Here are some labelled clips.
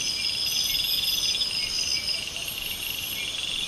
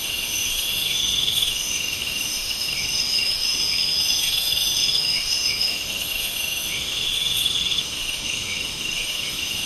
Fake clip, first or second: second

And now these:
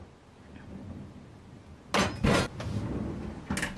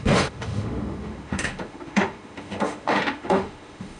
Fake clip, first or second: second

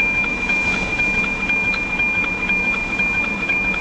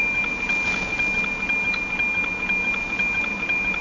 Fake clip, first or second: first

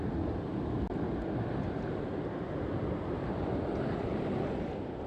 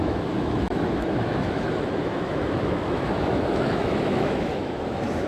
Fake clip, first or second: second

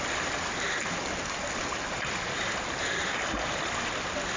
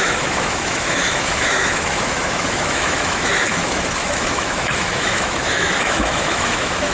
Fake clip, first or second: second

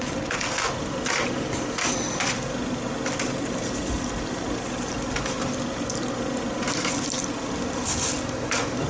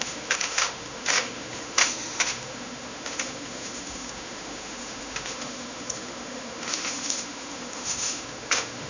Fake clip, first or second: second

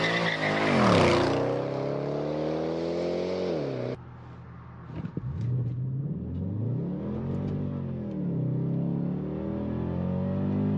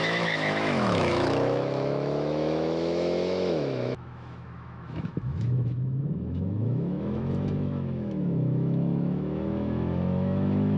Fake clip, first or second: second